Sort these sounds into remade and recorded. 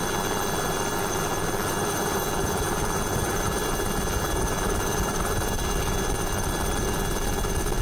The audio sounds recorded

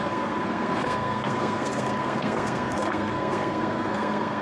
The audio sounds remade